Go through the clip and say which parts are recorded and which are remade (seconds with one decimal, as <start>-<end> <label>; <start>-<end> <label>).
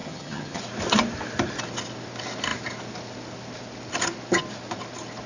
0.0-0.6 remade; 0.6-5.3 recorded